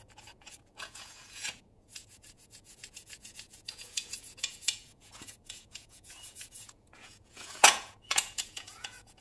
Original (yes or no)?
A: no